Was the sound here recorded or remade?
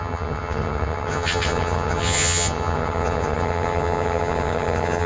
remade